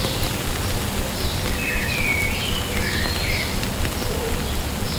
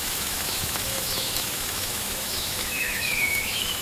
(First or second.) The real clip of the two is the first